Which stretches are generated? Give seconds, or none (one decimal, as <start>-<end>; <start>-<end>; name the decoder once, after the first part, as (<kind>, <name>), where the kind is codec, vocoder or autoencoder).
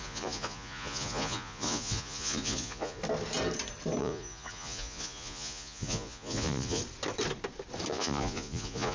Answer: 0.0-3.0 (vocoder, Vocos); 4.0-6.8; 7.9-8.9